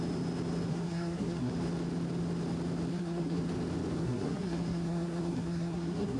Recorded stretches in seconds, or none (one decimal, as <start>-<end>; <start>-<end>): 0.0-0.7; 1.5-2.9; 3.4-4.0